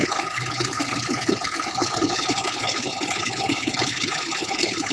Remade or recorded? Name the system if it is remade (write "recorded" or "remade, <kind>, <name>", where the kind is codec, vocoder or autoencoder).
remade, codec, HILCodec